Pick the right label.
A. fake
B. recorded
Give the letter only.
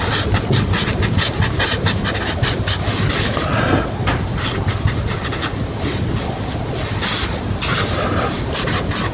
B